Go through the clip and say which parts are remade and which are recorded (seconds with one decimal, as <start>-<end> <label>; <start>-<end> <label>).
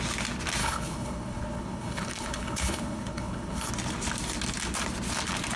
0.0-0.6 recorded; 0.6-3.7 remade; 3.7-5.6 recorded